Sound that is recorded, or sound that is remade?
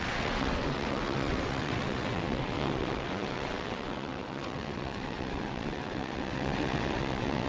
remade